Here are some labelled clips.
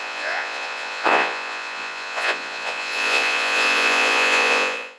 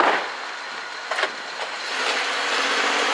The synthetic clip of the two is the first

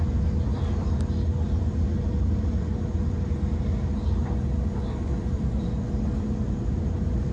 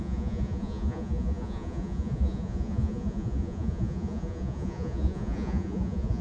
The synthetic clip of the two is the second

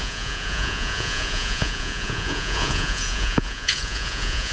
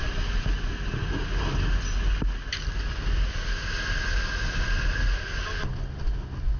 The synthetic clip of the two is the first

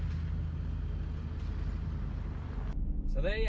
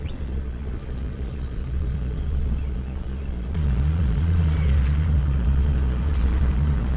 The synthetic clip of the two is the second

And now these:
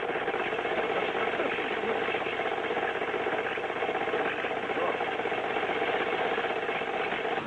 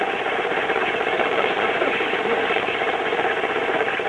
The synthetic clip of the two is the second